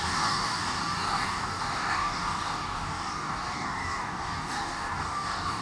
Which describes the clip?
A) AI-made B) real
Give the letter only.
A